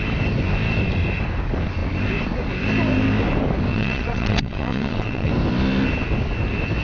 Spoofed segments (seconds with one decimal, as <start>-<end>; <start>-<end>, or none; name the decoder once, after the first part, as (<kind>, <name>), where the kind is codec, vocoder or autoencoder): 3.7-5.3 (vocoder, WaveNeXt)